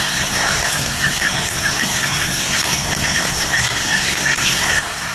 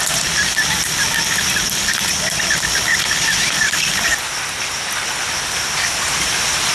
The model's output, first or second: first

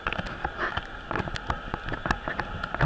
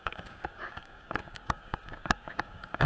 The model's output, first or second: second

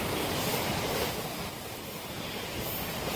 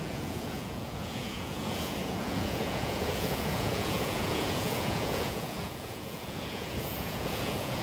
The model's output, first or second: second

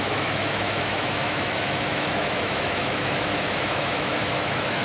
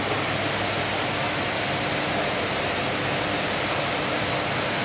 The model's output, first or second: first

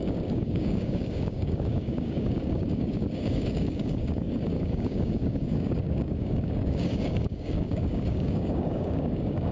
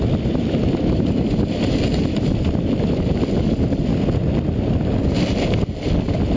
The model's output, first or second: first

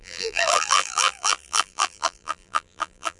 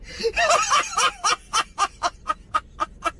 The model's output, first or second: first